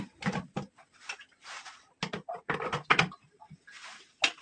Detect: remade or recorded recorded